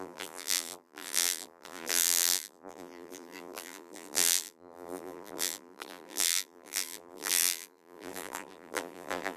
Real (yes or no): no